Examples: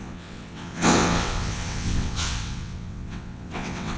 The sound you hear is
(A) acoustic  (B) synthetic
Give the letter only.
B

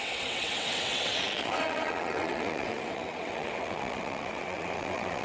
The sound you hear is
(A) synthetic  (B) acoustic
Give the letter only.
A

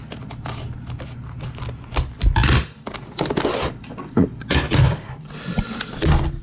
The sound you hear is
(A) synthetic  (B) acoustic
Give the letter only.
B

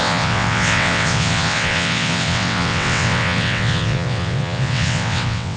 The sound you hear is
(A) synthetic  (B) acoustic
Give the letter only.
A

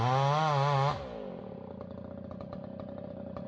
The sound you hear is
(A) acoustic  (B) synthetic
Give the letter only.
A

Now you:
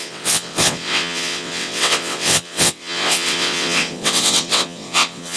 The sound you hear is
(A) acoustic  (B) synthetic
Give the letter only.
B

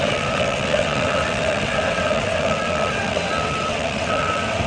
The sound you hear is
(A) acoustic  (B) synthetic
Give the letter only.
B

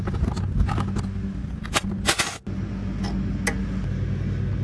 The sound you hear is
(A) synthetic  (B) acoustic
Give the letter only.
B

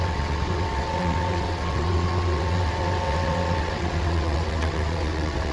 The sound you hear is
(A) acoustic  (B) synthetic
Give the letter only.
B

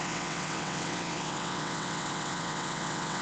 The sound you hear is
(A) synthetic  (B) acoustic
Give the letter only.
A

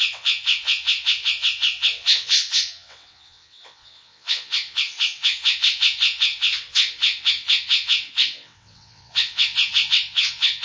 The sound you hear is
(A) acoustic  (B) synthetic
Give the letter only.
B